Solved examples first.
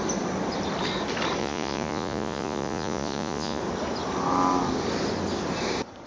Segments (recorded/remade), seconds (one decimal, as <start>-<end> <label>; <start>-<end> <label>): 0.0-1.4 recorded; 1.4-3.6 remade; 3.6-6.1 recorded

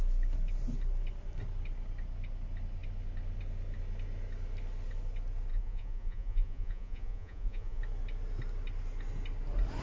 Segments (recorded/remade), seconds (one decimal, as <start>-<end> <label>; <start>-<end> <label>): 0.0-5.5 recorded; 5.5-7.8 remade; 7.8-9.8 recorded

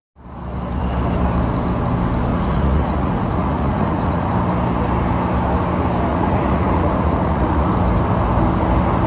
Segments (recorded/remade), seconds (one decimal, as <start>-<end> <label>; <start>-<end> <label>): 0.0-2.3 recorded; 2.3-4.3 remade; 4.3-6.1 recorded; 6.1-7.7 remade; 7.7-9.1 recorded

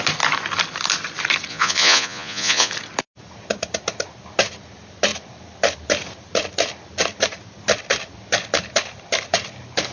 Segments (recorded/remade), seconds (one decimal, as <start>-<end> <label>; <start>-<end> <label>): 0.0-1.5 recorded; 1.5-2.7 remade; 2.7-9.9 recorded

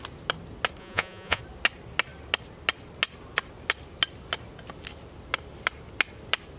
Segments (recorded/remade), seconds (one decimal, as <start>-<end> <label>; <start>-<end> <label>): 0.0-0.8 recorded; 0.8-1.4 remade; 1.4-6.6 recorded

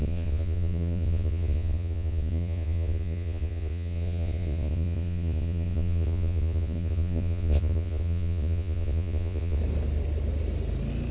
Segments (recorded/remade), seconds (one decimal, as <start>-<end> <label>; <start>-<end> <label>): 0.0-9.6 remade; 9.6-11.1 recorded

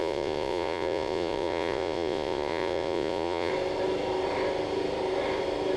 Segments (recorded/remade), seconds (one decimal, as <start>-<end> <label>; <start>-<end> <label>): 0.0-3.5 remade; 3.5-5.8 recorded